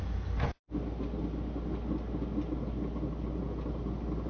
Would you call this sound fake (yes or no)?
no